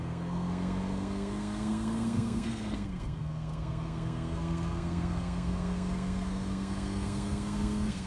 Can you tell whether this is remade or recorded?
remade